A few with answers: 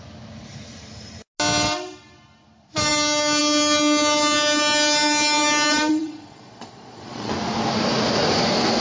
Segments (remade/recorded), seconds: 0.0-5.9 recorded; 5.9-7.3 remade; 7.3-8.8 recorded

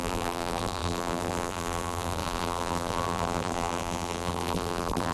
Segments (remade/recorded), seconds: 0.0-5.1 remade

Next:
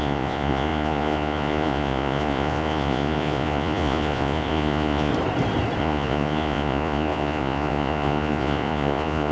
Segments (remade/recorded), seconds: 0.0-5.1 remade; 5.1-5.8 recorded; 5.8-9.3 remade

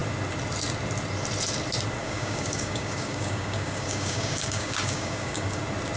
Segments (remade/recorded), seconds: 0.0-2.0 recorded; 2.0-5.6 remade; 5.6-6.0 recorded